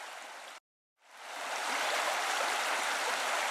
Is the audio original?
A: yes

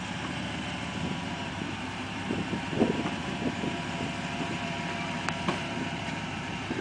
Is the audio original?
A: no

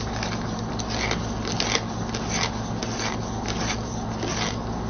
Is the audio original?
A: yes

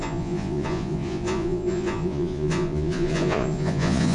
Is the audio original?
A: no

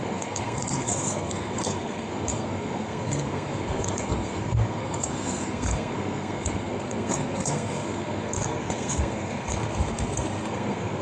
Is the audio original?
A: no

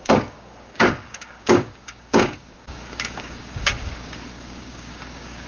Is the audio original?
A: no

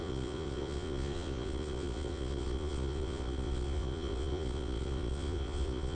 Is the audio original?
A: no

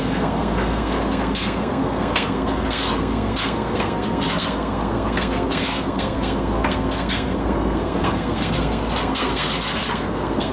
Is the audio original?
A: no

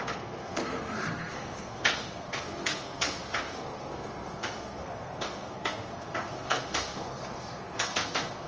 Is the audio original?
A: no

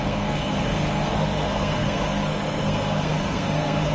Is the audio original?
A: no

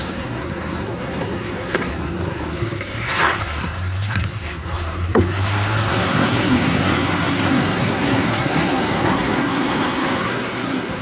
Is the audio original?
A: no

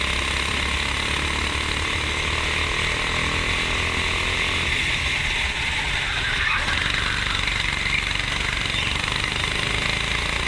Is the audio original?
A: yes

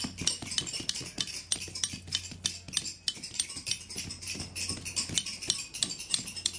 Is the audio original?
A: yes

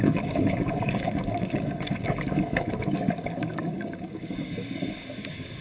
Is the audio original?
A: no